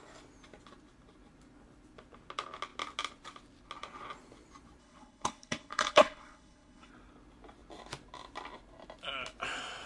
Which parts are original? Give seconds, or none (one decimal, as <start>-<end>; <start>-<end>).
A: 0.0-4.8; 6.9-9.9